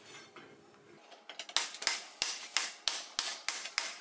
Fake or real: real